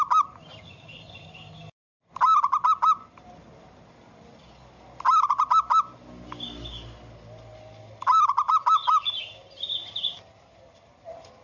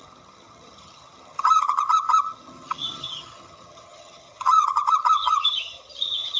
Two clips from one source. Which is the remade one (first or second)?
second